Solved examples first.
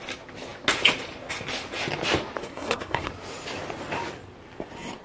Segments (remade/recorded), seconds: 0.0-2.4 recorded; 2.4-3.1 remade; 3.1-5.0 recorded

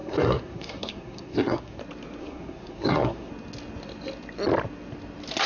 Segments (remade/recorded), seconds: 0.0-1.8 remade; 1.8-2.2 recorded; 2.2-3.3 remade; 3.3-5.5 recorded

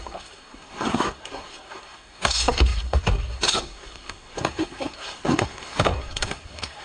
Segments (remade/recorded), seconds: 0.0-6.8 remade

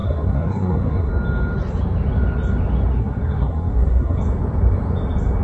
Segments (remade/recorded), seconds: 0.0-1.1 remade; 1.1-3.0 recorded; 3.0-4.2 remade; 4.2-5.4 recorded

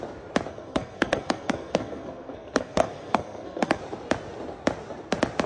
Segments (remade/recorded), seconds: 0.0-0.5 recorded; 0.5-3.8 remade; 3.8-5.5 recorded

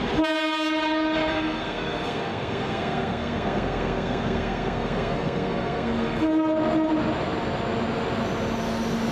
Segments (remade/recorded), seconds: 0.0-1.3 recorded; 1.3-6.3 remade; 6.3-9.1 recorded

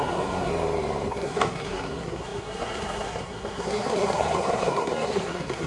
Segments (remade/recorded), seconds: 0.0-0.5 remade; 0.5-1.1 recorded; 1.1-5.7 remade